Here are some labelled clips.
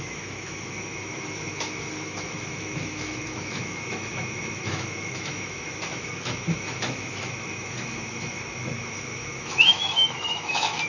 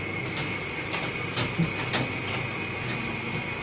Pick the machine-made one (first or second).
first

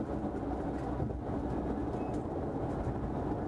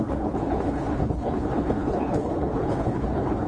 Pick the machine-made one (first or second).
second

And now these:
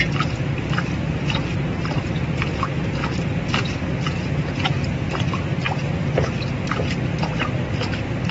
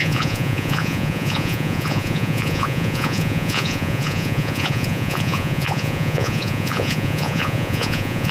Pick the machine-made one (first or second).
second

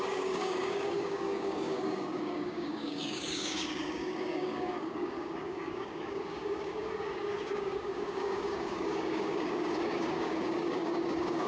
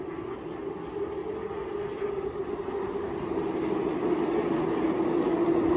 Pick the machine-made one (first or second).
first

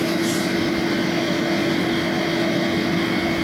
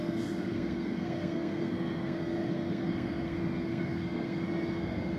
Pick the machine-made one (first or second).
second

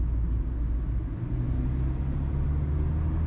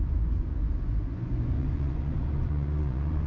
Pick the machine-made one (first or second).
second